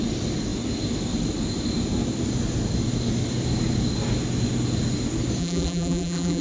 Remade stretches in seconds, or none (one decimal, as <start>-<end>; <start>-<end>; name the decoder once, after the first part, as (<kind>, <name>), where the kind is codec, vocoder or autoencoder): 5.4-6.4 (vocoder, BigVGAN v2)